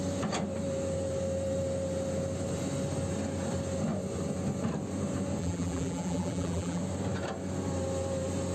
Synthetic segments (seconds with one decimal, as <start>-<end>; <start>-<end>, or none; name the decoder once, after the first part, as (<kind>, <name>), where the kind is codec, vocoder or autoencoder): 5.4-6.8 (vocoder, BigVGAN v2)

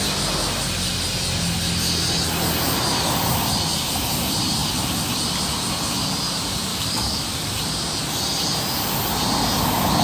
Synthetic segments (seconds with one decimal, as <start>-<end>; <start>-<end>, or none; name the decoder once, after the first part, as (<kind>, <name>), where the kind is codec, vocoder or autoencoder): 6.7-7.5 (codec, DAC)

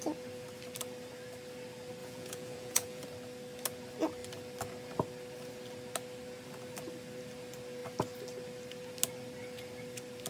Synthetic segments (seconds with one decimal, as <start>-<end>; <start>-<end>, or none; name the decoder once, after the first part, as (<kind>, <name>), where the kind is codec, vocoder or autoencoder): 2.0-3.0 (vocoder, Vocos)